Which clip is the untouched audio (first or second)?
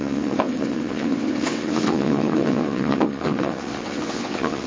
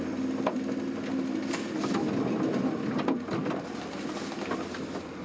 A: second